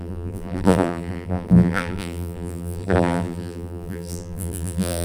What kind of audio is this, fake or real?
fake